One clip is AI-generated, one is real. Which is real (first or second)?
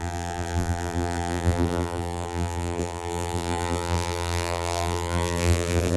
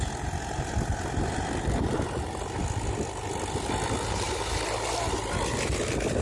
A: second